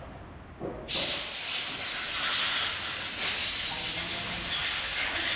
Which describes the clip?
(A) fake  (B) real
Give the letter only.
B